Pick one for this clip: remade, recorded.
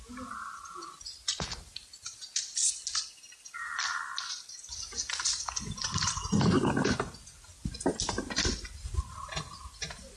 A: recorded